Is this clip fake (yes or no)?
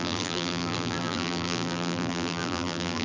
yes